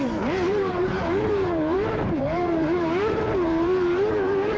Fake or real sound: fake